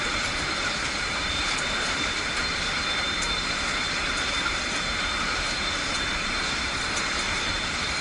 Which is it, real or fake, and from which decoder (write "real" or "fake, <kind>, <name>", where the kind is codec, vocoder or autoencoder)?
fake, vocoder, BigVGAN v2